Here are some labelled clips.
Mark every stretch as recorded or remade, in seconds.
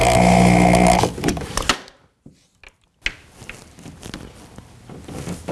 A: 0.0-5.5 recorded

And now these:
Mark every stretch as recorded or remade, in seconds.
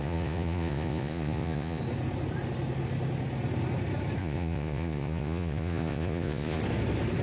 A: 0.0-1.8 remade; 1.8-4.2 recorded; 4.2-6.6 remade; 6.6-7.2 recorded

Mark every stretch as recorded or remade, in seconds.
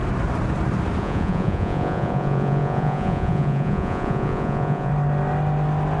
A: 0.0-1.0 recorded; 1.0-4.9 remade; 4.9-6.0 recorded